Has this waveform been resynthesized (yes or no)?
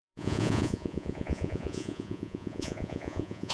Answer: yes